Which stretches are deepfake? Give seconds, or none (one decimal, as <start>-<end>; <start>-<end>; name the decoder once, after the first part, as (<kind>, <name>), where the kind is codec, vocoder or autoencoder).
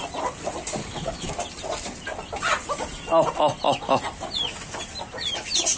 0.8-1.3 (codec, HILCodec)